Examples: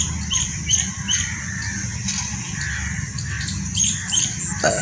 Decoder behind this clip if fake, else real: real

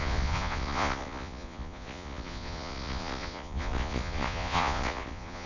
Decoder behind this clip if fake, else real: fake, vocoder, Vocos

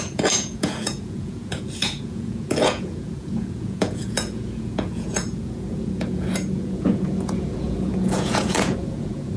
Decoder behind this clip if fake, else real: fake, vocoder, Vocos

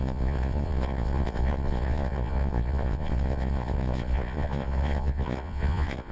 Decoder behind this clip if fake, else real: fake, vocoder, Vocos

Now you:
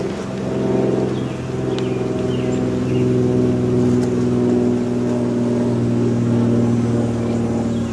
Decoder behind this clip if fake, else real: real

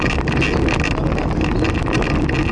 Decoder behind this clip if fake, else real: real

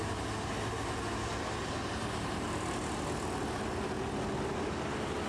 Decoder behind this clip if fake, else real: real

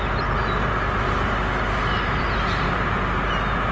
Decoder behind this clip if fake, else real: real